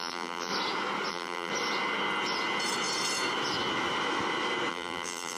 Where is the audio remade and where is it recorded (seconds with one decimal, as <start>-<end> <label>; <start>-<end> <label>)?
0.0-0.5 remade; 0.5-1.1 recorded; 1.1-1.5 remade; 1.5-4.7 recorded; 4.7-5.4 remade